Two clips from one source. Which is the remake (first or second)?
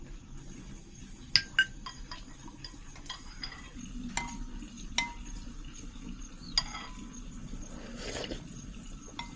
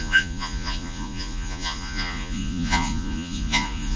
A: second